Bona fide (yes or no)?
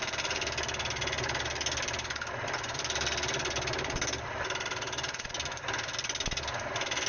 yes